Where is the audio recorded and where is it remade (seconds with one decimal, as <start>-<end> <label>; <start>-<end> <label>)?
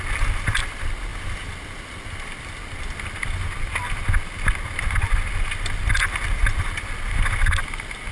0.0-8.1 recorded